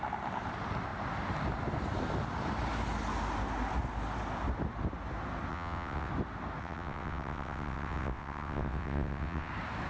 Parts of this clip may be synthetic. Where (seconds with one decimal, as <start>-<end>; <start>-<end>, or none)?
5.5-6.1; 6.6-9.5

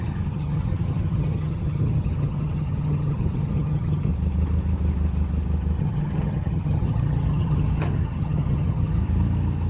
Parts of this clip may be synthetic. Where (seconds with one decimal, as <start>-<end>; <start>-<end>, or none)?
0.0-4.1; 5.8-9.0

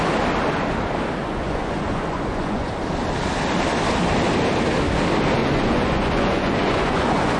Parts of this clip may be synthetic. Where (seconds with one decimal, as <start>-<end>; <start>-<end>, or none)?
1.2-2.7; 5.4-7.4

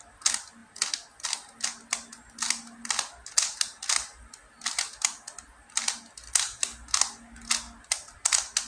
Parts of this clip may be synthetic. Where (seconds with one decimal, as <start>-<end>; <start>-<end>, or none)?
none

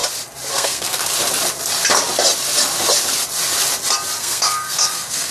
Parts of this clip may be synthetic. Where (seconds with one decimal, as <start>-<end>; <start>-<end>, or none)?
0.5-1.0; 4.2-5.3